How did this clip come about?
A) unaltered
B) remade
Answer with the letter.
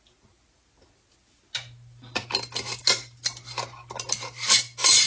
A